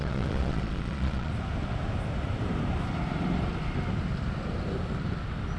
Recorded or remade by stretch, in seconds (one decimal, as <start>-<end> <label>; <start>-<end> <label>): 0.0-1.3 remade; 1.3-5.6 recorded